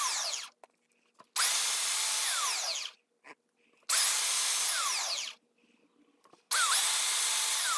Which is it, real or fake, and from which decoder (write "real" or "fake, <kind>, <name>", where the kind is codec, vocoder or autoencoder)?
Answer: real